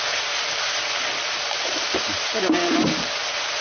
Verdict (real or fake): real